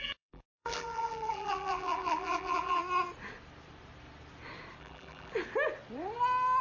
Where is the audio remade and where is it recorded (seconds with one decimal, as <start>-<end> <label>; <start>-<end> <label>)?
0.0-2.8 remade; 2.8-4.8 recorded; 4.8-5.3 remade; 5.3-6.6 recorded